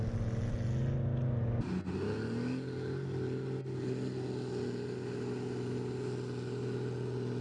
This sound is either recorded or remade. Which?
recorded